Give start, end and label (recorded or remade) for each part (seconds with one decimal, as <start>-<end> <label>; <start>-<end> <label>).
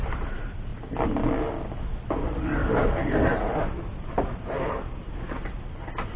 0.0-0.7 remade; 0.7-2.1 recorded; 2.1-5.0 remade; 5.0-6.2 recorded